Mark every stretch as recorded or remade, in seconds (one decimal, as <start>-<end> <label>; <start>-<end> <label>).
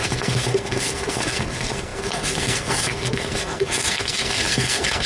0.0-5.1 remade